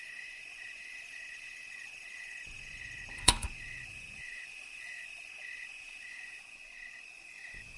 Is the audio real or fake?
fake